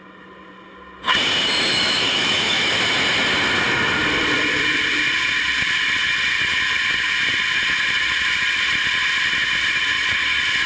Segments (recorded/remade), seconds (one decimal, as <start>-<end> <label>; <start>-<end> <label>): 0.0-1.7 recorded; 1.7-2.8 remade; 2.8-10.7 recorded